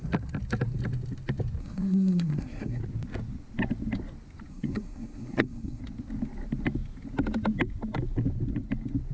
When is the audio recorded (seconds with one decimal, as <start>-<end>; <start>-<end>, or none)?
0.0-1.6; 2.8-4.5; 5.8-9.1